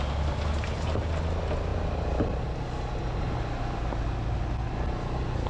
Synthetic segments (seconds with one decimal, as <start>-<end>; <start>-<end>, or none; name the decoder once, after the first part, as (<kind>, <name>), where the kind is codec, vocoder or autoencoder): none